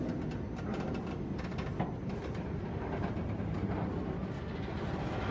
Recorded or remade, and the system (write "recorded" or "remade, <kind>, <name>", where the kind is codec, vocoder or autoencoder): recorded